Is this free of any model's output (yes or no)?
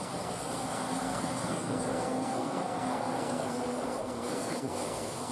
no